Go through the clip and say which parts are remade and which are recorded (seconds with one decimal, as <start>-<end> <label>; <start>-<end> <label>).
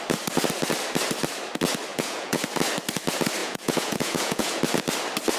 0.0-1.9 recorded; 1.9-2.4 remade; 2.4-3.4 recorded; 3.4-4.6 remade; 4.6-5.4 recorded